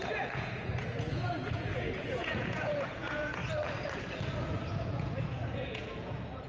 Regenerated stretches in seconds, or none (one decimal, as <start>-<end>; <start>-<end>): 0.0-3.4; 4.8-6.5